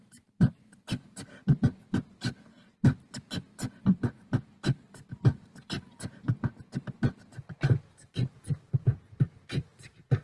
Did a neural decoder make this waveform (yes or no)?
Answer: no